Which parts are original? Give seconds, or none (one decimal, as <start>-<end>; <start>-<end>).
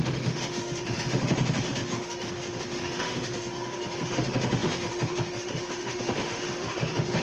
none